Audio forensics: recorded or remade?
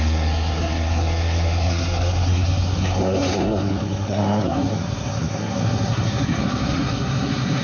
remade